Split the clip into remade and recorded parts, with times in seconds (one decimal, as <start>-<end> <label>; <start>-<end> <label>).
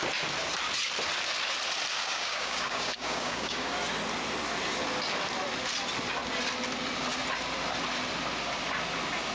0.0-2.0 recorded; 2.0-3.7 remade; 3.7-9.3 recorded